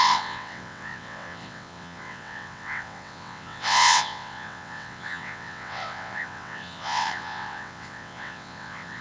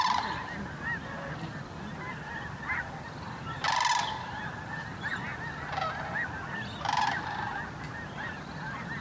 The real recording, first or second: second